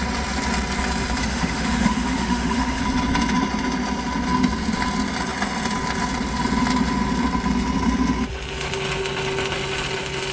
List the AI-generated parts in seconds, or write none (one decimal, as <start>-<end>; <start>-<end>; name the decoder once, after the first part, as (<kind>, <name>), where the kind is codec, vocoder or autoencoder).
1.2-2.8 (autoencoder, DAC-VAE)